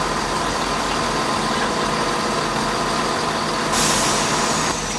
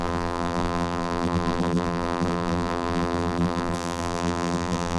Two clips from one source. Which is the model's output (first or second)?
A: second